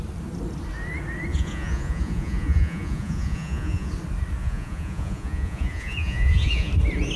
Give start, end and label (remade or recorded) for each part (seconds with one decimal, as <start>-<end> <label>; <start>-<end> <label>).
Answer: 0.0-1.3 recorded; 1.3-3.9 remade; 3.9-4.4 recorded; 4.4-6.7 remade; 6.7-7.2 recorded